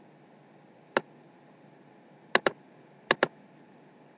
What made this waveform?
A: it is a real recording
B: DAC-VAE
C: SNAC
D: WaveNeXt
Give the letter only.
A